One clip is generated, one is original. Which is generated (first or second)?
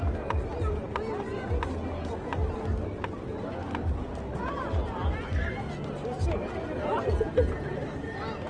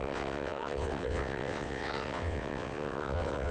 second